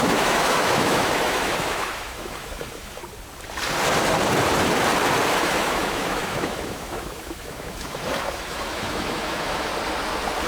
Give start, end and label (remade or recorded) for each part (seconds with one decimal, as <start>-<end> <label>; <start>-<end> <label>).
0.0-3.0 remade; 3.0-5.4 recorded; 5.4-9.7 remade; 9.7-10.5 recorded